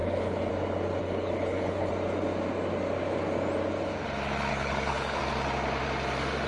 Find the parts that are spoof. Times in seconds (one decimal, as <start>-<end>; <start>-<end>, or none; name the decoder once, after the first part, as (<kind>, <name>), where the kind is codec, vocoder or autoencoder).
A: 0.0-0.5 (codec, HILCodec); 1.0-1.9; 4.5-5.2